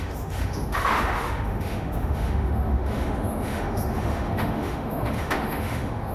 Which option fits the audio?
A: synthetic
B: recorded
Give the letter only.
A